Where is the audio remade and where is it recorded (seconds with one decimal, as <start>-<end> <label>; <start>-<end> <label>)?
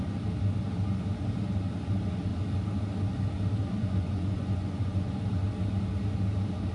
0.0-3.8 recorded; 3.8-5.1 remade; 5.1-6.7 recorded